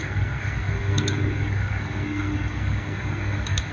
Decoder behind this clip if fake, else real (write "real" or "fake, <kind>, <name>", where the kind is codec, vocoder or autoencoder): fake, codec, SNAC